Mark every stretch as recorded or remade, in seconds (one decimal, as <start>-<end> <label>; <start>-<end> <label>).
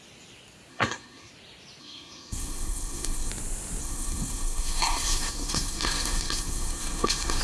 0.0-0.7 recorded; 0.7-1.3 remade; 1.3-1.8 recorded; 1.8-3.3 remade; 3.3-3.8 recorded; 3.8-7.4 remade